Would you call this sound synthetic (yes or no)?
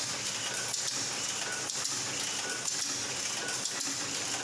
no